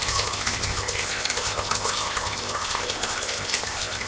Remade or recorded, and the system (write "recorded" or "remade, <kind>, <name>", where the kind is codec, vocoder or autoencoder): remade, codec, ZipCodec